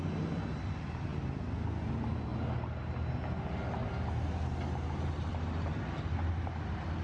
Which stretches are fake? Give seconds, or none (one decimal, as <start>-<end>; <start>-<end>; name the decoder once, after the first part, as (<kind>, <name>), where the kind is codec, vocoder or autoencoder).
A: none